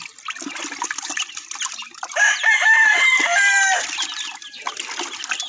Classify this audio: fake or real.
real